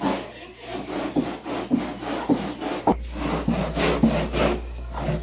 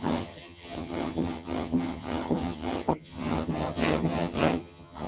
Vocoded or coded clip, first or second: second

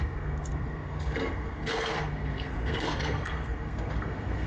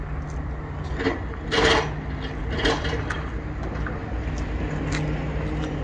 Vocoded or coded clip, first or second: first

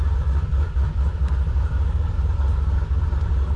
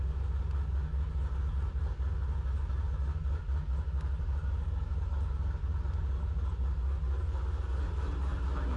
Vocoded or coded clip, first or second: first